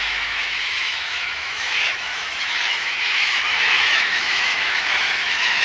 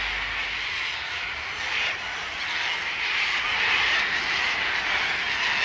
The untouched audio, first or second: second